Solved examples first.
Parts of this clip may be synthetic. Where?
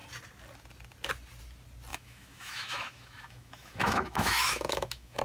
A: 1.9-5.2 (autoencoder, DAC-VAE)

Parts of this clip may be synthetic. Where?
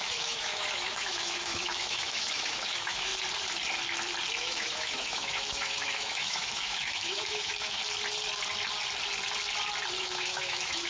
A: 0.0-3.1 (autoencoder, DAC-VAE); 4.4-7.8; 10.0-10.9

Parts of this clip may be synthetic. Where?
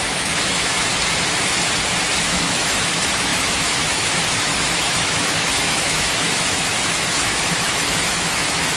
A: 0.0-0.9 (autoencoder, DAC-VAE); 2.2-8.8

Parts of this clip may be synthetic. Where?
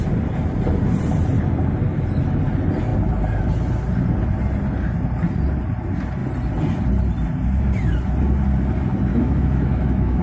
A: 9.1-10.2 (autoencoder, DAC-VAE)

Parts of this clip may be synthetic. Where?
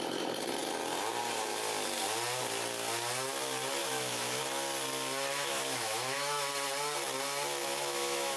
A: 3.8-4.4 (autoencoder, DAC-VAE); 5.3-6.5; 7.6-8.4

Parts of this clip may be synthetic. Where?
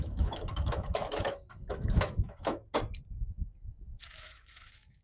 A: 0.0-2.6 (autoencoder, DAC-VAE); 3.3-5.0